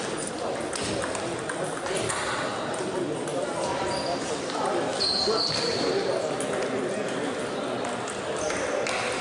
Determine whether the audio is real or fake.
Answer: real